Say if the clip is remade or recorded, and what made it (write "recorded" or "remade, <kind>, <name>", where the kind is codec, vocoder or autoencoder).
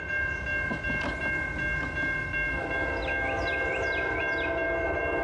recorded